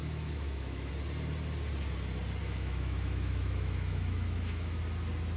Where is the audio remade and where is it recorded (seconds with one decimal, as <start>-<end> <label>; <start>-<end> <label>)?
0.0-0.9 remade; 0.9-2.4 recorded; 2.4-4.8 remade; 4.8-5.4 recorded